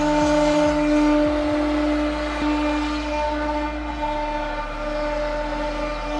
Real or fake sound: real